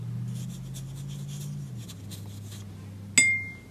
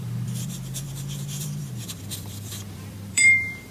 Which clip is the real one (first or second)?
first